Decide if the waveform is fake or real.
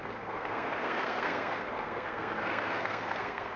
fake